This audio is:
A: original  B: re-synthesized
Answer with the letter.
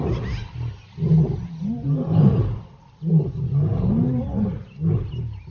A